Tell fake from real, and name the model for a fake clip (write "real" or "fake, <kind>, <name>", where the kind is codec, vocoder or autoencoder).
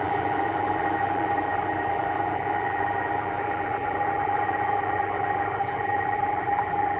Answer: fake, vocoder, BigVGAN v2